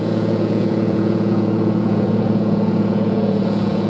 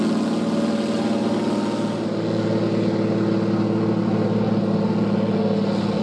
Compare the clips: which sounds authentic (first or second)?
second